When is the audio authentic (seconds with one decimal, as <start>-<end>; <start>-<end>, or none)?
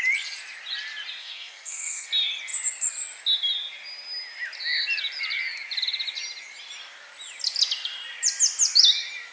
0.0-1.2; 2.1-9.3